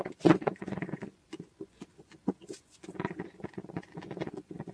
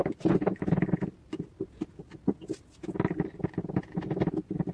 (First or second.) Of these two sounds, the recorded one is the second